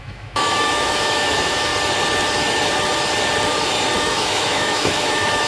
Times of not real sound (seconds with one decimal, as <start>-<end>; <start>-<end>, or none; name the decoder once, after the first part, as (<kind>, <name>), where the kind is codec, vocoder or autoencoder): 0.0-1.7 (autoencoder, DAC-VAE); 4.0-5.5